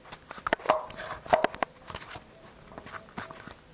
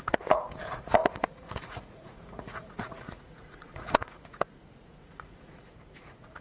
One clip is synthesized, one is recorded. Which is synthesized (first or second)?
second